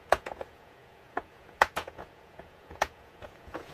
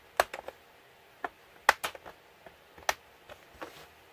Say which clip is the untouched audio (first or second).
second